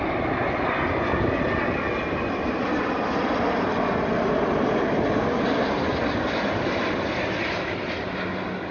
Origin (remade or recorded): recorded